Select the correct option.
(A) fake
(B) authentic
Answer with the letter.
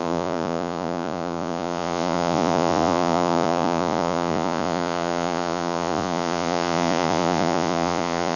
A